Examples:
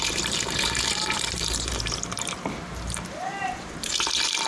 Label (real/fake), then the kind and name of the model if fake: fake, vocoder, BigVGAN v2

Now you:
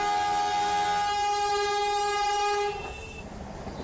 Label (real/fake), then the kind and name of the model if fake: real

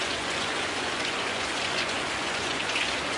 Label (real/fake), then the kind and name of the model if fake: fake, vocoder, Vocos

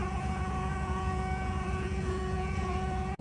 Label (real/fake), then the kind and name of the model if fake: fake, vocoder, Vocos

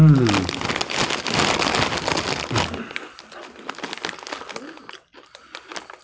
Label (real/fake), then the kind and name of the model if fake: real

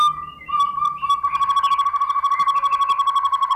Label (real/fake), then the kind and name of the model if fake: real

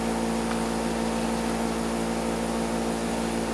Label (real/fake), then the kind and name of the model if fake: real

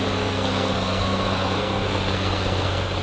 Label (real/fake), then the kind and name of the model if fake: fake, codec, SNAC